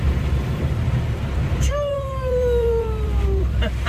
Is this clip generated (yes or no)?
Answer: yes